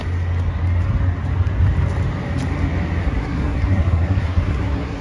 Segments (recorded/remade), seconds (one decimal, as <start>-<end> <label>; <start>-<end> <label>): 0.0-3.0 recorded; 3.0-5.0 remade